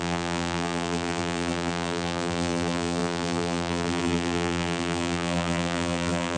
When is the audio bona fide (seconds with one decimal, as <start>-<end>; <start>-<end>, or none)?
none